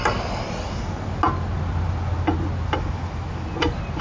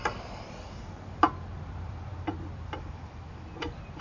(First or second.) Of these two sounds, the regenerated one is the second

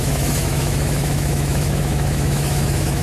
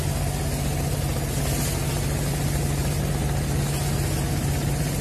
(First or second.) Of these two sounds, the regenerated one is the first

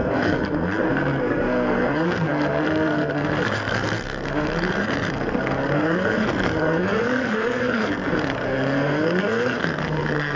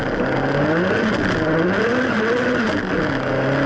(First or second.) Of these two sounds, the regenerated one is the first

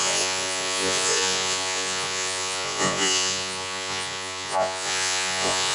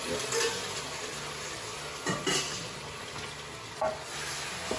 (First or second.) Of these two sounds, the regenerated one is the first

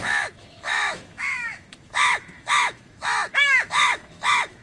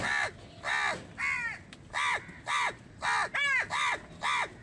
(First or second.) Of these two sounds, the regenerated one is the first